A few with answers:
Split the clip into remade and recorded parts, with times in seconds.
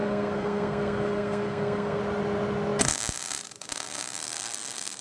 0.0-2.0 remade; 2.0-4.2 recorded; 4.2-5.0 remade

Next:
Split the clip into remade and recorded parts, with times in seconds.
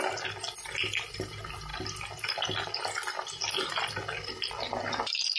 0.0-5.4 recorded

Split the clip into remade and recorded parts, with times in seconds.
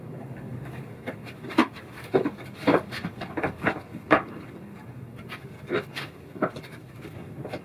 0.0-7.6 remade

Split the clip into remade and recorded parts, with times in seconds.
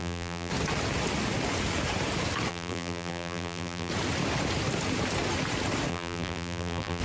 0.0-0.5 remade; 0.5-2.5 recorded; 2.5-3.9 remade; 3.9-5.9 recorded; 5.9-7.0 remade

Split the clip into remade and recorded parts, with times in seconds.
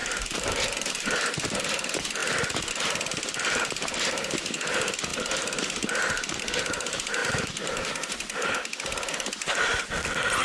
0.0-1.3 remade; 1.3-5.1 recorded; 5.1-6.4 remade; 6.4-7.2 recorded; 7.2-7.9 remade; 7.9-10.4 recorded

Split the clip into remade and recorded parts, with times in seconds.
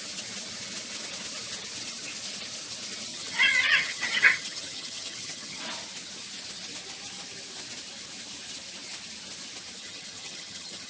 0.0-3.1 recorded; 3.1-5.6 remade; 5.6-9.8 recorded; 9.8-10.9 remade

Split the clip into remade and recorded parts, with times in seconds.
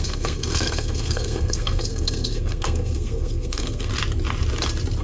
0.0-3.9 remade; 3.9-5.0 recorded